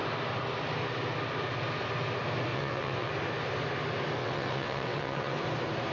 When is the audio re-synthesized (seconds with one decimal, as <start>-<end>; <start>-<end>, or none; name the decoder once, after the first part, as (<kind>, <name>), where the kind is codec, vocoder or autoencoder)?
2.5-3.1 (vocoder, WaveNeXt); 4.2-5.4